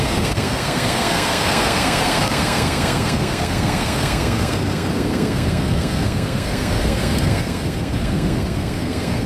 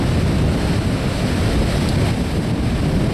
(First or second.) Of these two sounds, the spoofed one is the first